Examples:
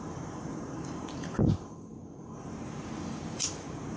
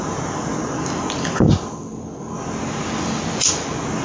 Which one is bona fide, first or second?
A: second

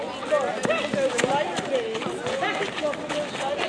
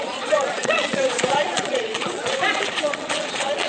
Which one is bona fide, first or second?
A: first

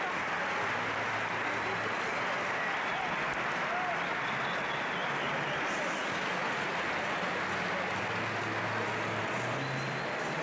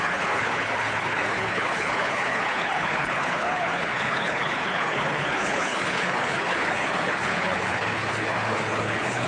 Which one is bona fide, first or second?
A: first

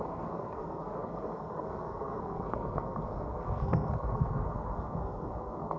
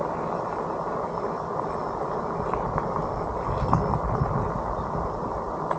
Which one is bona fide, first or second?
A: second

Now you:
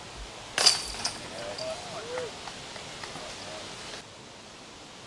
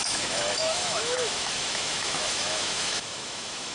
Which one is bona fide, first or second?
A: first